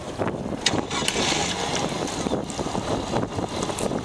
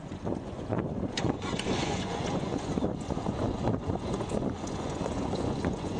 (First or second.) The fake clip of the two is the second